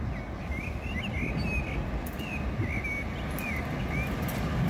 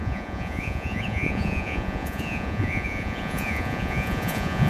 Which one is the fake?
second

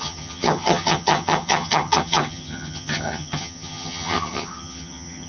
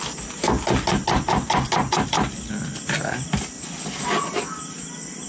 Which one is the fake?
first